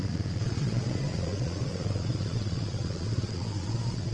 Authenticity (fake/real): fake